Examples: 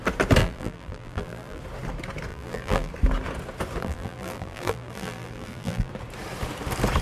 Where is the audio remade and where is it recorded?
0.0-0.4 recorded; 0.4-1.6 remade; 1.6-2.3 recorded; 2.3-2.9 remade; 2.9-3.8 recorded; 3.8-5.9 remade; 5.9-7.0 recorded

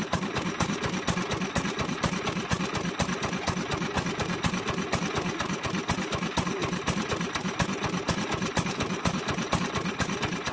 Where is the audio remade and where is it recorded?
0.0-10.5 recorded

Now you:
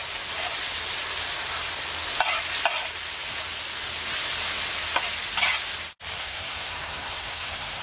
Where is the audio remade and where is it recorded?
0.0-6.2 recorded; 6.2-7.8 remade

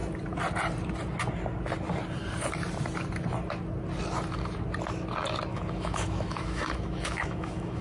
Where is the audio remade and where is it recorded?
0.0-5.5 recorded; 5.5-7.8 remade